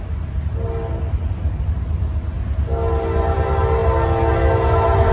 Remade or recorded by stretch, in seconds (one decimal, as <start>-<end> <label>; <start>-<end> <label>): 0.0-5.1 recorded